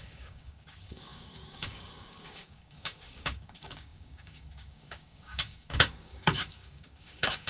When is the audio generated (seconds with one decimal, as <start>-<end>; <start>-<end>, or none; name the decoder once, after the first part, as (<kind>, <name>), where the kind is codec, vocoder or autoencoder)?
0.0-7.5 (codec, DAC)